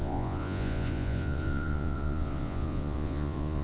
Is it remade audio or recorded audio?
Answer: remade